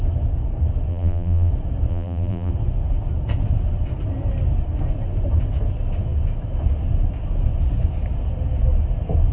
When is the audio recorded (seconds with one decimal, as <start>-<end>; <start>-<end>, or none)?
0.0-0.9; 1.5-1.9; 2.5-9.3